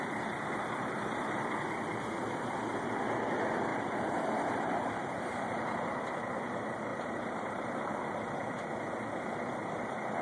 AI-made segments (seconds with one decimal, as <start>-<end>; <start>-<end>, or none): 3.7-6.1; 6.9-7.6